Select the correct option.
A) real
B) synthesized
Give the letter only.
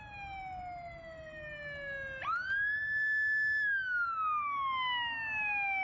A